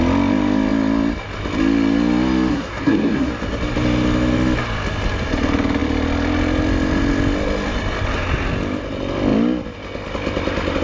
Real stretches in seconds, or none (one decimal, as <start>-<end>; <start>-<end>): 0.0-2.5; 3.3-10.8